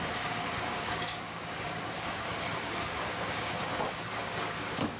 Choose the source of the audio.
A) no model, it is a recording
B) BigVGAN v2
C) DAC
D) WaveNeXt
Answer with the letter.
C